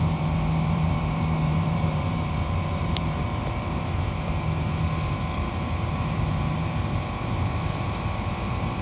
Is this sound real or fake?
fake